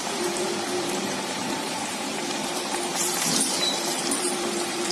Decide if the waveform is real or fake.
fake